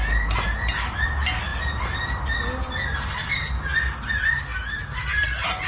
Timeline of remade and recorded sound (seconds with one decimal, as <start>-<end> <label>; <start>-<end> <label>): 0.0-5.7 recorded